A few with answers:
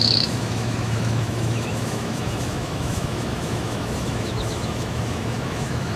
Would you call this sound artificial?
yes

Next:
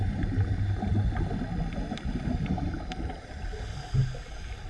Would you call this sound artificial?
no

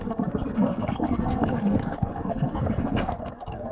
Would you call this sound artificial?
yes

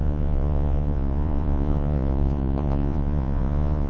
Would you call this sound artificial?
yes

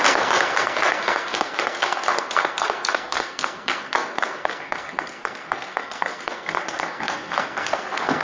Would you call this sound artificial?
yes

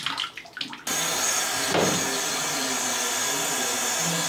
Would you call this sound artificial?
no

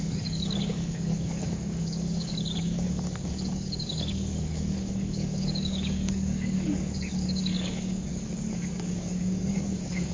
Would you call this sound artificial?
yes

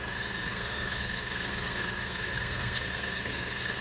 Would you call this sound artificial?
yes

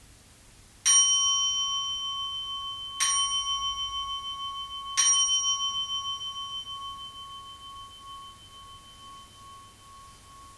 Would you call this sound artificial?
no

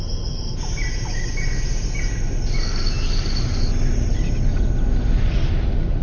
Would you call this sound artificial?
no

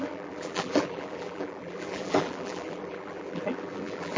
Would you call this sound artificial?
yes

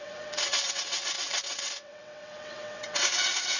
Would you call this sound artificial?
yes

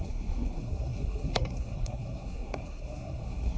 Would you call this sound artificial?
yes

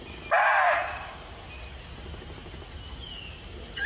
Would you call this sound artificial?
no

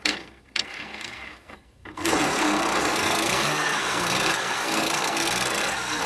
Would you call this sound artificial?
yes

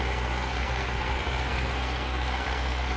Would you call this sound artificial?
yes